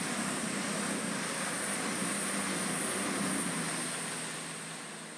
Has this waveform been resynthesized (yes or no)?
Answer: no